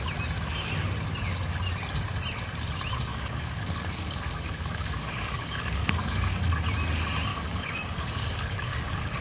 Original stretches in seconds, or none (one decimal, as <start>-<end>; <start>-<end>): 0.0-3.1; 6.4-7.3